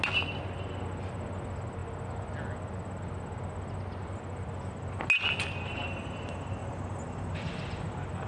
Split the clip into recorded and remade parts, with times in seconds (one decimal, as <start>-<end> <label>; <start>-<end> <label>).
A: 0.0-8.3 recorded